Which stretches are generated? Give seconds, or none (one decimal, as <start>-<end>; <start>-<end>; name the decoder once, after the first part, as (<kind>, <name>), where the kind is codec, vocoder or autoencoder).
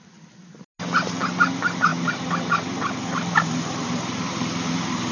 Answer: 1.9-5.1 (vocoder, BigVGAN v2)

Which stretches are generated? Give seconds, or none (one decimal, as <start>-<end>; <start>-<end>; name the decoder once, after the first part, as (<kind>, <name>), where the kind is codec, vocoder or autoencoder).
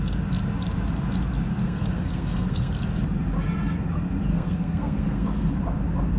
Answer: 1.6-2.7 (codec, SNAC); 4.3-5.6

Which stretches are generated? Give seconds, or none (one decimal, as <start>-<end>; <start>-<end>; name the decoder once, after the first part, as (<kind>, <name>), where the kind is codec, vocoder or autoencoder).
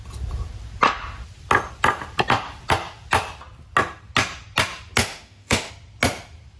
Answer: 5.0-5.7 (autoencoder, DAC-VAE)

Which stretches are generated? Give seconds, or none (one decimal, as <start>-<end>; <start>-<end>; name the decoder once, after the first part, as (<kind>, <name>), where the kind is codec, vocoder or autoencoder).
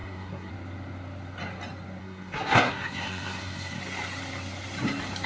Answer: 0.0-0.5 (codec, SNAC); 2.0-3.8